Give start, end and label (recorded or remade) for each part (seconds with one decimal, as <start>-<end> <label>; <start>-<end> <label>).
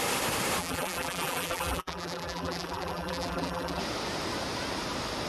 0.0-0.6 recorded; 0.6-3.8 remade; 3.8-5.3 recorded